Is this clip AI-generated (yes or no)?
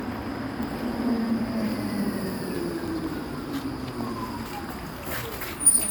yes